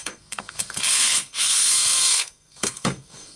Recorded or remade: remade